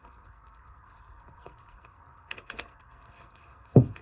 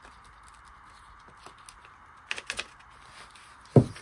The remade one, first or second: first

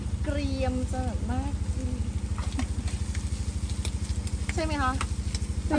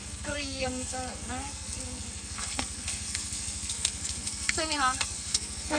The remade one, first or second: second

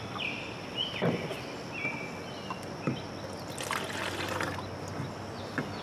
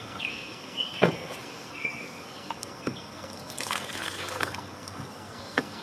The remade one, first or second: second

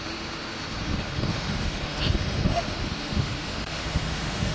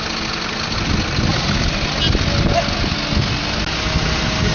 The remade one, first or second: first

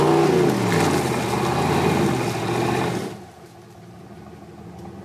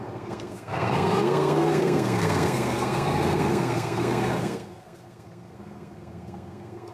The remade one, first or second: second